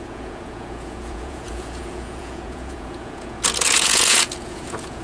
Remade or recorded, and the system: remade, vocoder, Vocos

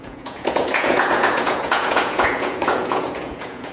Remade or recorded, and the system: remade, vocoder, Vocos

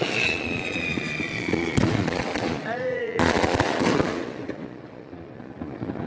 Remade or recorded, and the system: remade, vocoder, Vocos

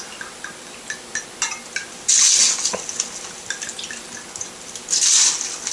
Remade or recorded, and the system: recorded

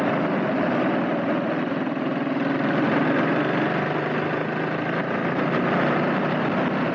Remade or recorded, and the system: recorded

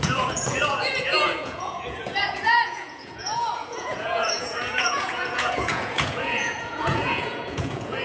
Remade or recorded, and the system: remade, vocoder, Vocos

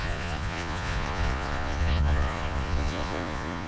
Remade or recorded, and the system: remade, vocoder, Vocos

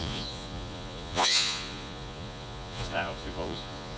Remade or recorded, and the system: remade, vocoder, Vocos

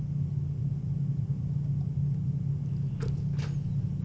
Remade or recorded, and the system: recorded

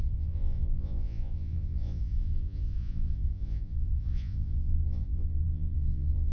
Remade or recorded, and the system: remade, vocoder, Vocos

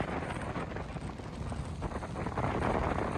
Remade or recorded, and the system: recorded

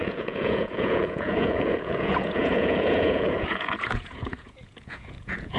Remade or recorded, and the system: remade, vocoder, Vocos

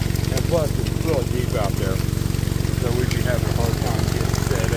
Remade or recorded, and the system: recorded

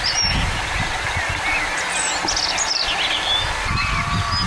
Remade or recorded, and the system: recorded